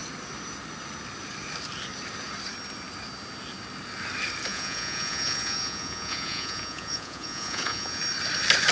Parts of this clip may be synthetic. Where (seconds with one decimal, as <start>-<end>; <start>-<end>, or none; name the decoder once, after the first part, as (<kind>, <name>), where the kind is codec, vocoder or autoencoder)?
4.5-8.0 (vocoder, Vocos)